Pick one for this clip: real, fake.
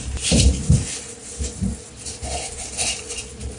real